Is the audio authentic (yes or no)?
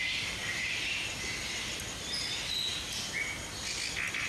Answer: yes